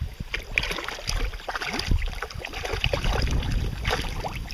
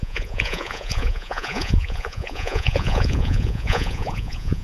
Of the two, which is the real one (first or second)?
first